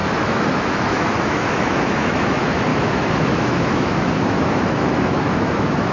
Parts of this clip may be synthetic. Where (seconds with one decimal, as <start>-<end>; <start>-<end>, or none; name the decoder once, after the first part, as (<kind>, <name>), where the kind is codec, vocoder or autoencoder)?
0.0-5.9 (autoencoder, DAC-VAE)